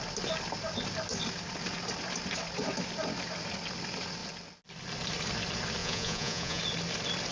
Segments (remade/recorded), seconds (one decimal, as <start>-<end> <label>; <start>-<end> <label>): 0.0-5.8 recorded; 5.8-6.6 remade; 6.6-7.3 recorded